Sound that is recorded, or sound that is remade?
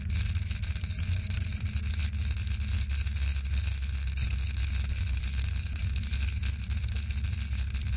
recorded